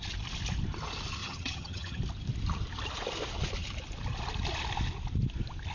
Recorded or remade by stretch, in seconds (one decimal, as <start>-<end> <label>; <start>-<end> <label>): 0.0-1.2 recorded; 1.2-2.0 remade; 2.0-5.7 recorded